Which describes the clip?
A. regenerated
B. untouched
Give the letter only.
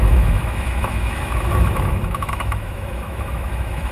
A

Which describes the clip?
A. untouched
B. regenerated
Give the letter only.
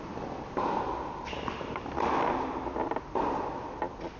A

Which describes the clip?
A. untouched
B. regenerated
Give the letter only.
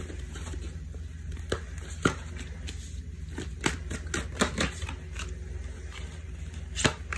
A